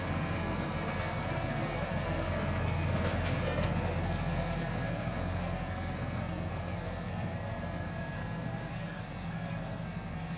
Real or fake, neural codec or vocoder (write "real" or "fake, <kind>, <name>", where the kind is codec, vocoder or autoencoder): fake, codec, SNAC